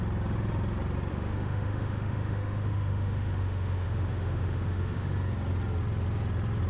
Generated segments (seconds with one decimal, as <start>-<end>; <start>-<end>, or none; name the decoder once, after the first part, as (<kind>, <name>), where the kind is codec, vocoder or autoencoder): 1.1-5.1 (autoencoder, DAC-VAE)